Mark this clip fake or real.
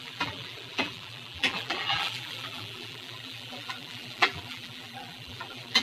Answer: fake